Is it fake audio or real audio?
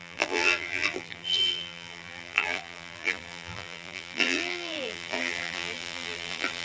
fake